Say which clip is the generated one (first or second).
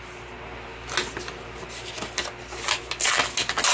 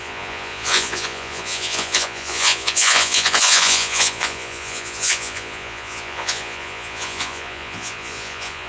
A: second